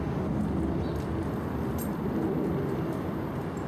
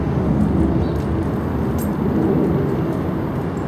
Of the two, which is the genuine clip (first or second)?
second